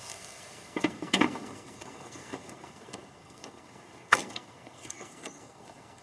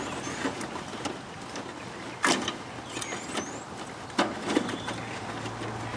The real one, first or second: second